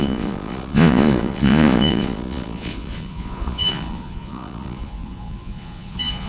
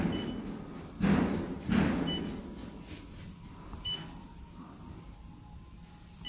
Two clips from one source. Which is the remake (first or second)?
first